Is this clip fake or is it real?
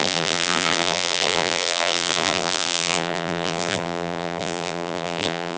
fake